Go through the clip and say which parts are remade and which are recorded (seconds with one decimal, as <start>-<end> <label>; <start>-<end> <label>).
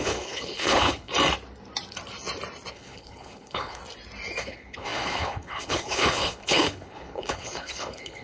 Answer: 0.0-1.1 remade; 1.1-2.7 recorded; 2.7-3.8 remade; 3.8-4.4 recorded; 4.4-8.2 remade